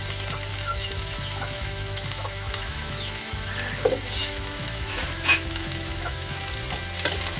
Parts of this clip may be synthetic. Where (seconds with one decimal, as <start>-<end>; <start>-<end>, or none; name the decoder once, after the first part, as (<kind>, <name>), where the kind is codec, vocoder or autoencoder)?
0.5-3.5 (autoencoder, DAC-VAE); 4.2-6.4